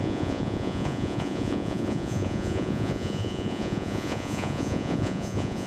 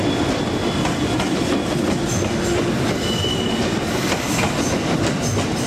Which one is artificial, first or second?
first